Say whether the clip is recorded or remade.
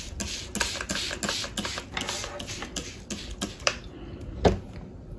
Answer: recorded